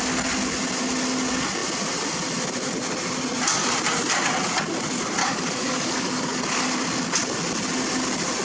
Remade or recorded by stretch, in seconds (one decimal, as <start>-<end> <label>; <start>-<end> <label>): 0.0-5.2 recorded; 5.2-6.4 remade; 6.4-8.4 recorded